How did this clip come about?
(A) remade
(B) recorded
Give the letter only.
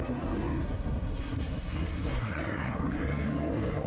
A